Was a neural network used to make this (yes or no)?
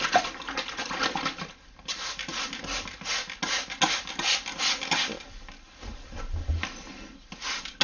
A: no